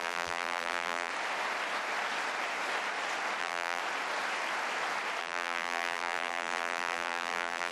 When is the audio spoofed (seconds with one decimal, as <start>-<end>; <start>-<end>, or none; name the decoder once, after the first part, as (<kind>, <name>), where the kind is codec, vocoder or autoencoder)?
0.0-1.1 (vocoder, BigVGAN v2); 3.4-3.8; 5.2-7.7